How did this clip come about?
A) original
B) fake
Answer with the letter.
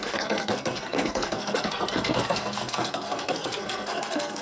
B